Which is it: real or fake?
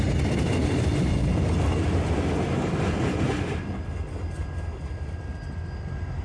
real